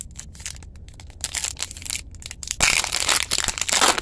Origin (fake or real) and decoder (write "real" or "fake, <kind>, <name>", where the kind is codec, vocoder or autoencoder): real